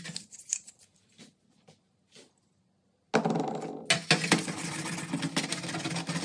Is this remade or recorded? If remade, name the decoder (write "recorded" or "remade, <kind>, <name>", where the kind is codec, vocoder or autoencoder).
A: recorded